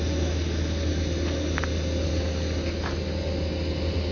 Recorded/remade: recorded